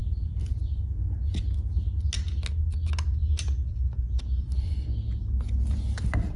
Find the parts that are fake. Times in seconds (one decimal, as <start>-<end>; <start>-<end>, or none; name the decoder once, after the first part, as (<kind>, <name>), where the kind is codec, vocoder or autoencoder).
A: none

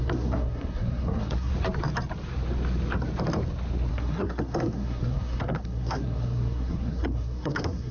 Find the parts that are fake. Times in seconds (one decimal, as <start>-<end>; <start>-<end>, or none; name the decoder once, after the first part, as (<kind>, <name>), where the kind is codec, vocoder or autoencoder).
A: 0.0-1.5 (codec, SNAC); 3.9-7.9

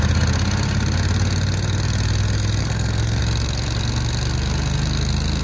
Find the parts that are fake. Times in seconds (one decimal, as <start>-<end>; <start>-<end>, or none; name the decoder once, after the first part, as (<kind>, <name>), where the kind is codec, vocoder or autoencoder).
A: 2.6-3.2 (codec, SNAC)

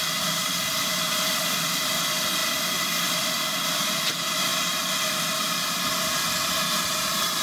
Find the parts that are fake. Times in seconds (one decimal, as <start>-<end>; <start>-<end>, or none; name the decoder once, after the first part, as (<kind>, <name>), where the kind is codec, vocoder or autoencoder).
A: none

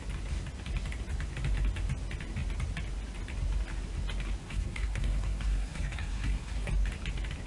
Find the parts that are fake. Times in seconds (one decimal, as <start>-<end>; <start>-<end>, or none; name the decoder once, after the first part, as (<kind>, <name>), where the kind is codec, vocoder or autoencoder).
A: 4.4-6.7 (codec, SNAC)

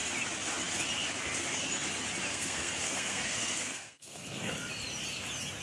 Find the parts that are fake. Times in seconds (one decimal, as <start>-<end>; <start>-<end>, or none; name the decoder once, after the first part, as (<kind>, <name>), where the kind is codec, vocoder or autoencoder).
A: 2.3-4.5 (codec, SNAC)

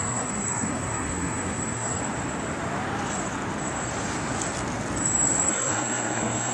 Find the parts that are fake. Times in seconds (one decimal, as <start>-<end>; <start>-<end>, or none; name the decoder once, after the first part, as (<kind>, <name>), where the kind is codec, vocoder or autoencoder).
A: 0.0-2.0 (codec, SNAC); 5.5-6.5